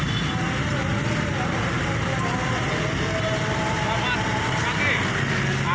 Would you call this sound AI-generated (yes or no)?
no